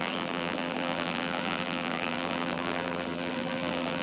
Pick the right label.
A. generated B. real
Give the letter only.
A